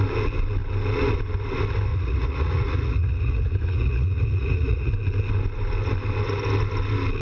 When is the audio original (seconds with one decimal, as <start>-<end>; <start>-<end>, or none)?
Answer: 0.0-1.9; 4.9-7.2